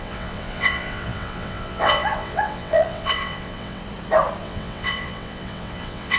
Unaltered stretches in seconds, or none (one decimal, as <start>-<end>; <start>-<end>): 3.8-4.4